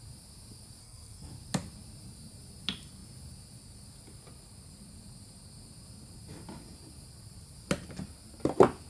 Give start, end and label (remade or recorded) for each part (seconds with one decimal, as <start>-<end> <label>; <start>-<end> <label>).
0.0-0.8 recorded; 0.8-1.3 remade; 1.3-8.9 recorded